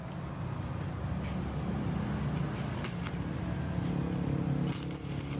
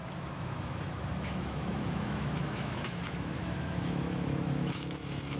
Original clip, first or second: first